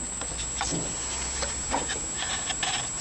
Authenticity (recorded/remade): recorded